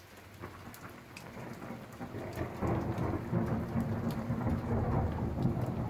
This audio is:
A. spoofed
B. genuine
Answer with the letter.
B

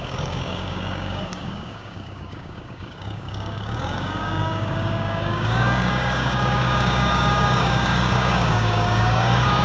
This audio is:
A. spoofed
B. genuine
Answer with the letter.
A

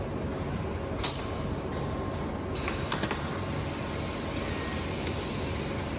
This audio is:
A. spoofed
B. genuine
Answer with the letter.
B